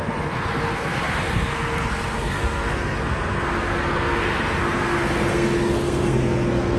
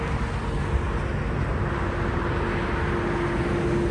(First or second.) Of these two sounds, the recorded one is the second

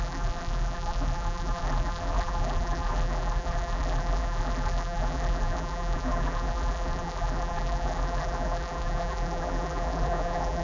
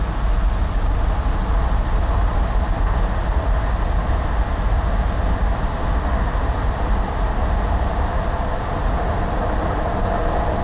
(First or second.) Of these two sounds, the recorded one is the second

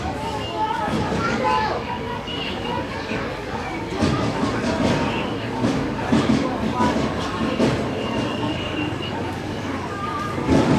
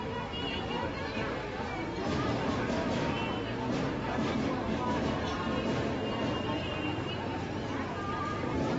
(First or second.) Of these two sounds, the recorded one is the second